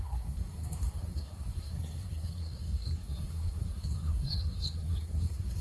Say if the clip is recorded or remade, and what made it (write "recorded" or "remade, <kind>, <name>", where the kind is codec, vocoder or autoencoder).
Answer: remade, codec, SNAC